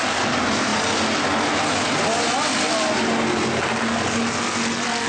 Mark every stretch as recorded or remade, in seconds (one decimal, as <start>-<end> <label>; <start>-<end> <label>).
0.0-5.1 recorded